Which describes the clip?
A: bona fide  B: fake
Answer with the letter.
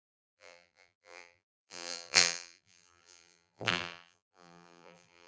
B